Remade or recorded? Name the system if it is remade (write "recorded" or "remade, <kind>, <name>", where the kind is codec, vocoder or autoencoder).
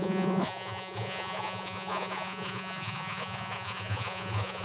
remade, vocoder, Vocos